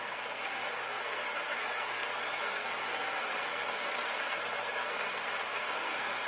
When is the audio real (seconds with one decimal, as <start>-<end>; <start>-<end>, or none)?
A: none